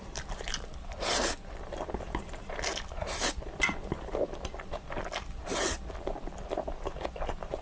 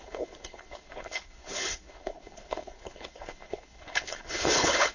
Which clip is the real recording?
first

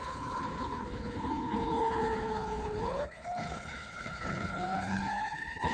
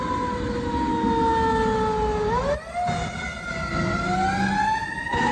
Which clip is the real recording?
second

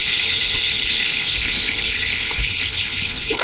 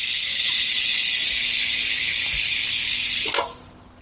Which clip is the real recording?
second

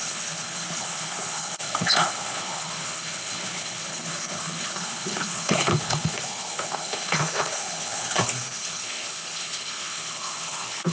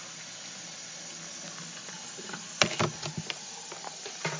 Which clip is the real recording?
second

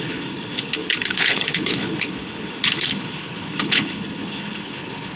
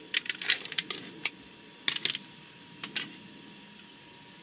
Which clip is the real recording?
second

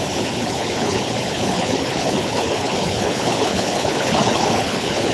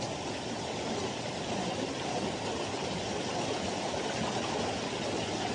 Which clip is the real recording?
second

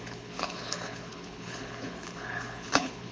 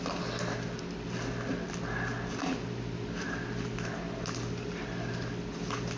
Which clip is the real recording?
second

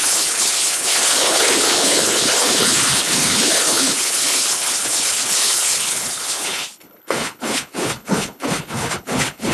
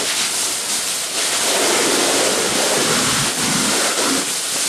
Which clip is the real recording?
second